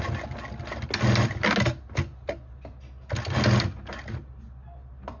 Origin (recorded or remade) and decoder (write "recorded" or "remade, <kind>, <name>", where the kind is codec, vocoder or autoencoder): recorded